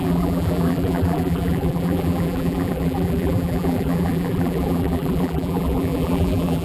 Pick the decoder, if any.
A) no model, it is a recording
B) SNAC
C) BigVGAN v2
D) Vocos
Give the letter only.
C